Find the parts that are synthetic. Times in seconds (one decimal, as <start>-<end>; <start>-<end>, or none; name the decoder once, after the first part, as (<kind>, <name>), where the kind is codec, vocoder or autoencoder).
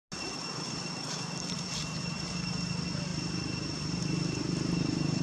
none